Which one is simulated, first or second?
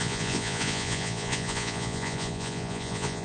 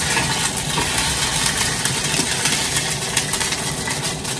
first